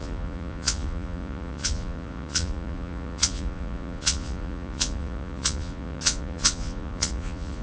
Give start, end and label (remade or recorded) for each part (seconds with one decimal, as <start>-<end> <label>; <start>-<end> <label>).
0.0-7.6 remade